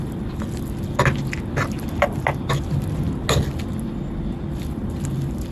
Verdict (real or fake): real